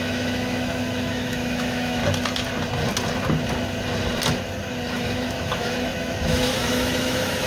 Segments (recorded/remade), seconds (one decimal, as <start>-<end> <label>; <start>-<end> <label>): 0.0-2.0 remade; 2.0-4.9 recorded; 4.9-7.5 remade